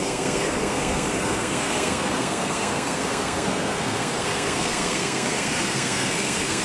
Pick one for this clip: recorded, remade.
remade